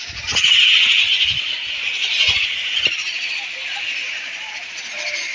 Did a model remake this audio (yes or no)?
no